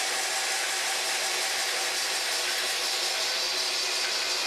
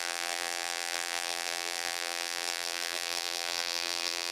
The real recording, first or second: first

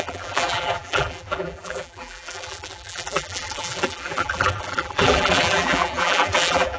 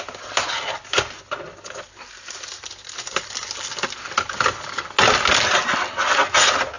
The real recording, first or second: second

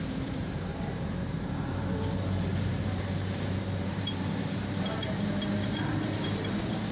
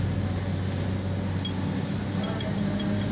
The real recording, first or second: second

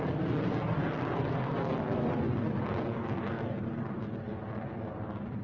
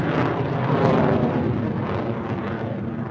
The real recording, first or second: first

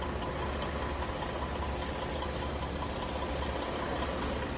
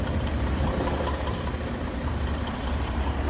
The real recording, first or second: first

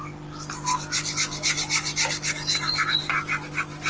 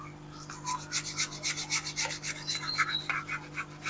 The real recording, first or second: second